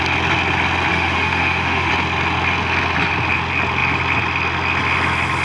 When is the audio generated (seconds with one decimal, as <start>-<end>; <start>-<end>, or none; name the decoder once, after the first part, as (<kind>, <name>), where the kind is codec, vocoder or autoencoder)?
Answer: 0.9-1.9 (autoencoder, DAC-VAE)

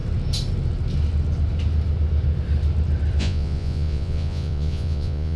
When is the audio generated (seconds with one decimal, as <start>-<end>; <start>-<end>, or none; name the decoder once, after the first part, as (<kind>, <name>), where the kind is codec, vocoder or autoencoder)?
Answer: 3.2-5.4 (vocoder, Vocos)

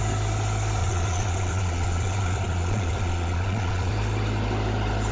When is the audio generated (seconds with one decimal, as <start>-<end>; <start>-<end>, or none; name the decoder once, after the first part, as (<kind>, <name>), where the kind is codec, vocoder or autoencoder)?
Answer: 0.8-3.9 (vocoder, Vocos)

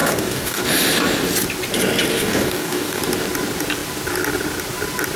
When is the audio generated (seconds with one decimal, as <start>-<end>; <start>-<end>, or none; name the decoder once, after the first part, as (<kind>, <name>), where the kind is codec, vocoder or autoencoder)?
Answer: 0.0-0.6 (codec, DAC); 2.1-3.0

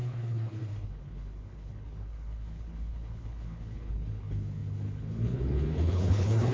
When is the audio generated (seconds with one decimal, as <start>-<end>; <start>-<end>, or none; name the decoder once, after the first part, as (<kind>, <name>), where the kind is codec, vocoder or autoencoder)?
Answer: 0.0-6.5 (codec, HILCodec)

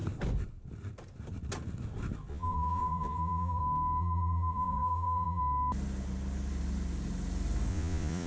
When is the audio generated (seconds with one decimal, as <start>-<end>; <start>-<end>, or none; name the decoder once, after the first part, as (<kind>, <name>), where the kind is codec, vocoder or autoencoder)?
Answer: 2.3-3.6 (vocoder, Vocos); 4.0-5.4; 7.7-8.3

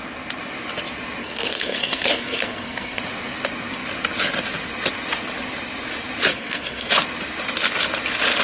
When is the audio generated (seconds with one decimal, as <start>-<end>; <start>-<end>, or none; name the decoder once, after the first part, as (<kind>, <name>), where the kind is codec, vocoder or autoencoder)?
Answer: 1.2-3.0 (codec, SNAC); 6.3-6.9